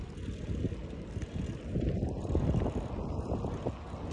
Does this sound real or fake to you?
real